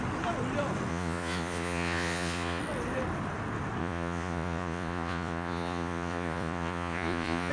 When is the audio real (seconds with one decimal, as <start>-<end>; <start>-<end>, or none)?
0.0-0.9; 2.6-3.8